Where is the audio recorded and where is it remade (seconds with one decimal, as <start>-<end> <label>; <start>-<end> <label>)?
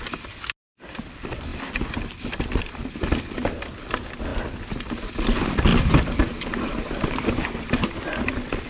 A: 0.0-1.5 recorded; 1.5-2.6 remade; 2.6-4.3 recorded; 4.3-5.1 remade; 5.1-5.7 recorded; 5.7-7.2 remade; 7.2-8.7 recorded